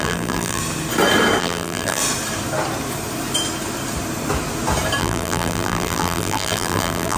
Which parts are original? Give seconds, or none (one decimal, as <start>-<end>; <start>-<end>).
0.6-1.4; 2.0-5.0